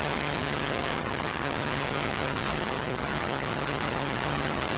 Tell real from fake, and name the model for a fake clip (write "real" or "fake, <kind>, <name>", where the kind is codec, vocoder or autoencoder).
fake, vocoder, HiFi-GAN